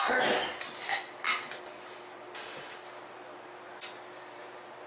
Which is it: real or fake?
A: real